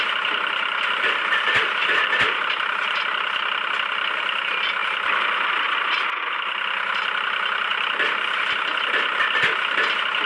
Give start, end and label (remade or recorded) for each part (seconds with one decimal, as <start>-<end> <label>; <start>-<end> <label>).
0.0-1.8 recorded; 1.8-3.0 remade; 3.0-10.3 recorded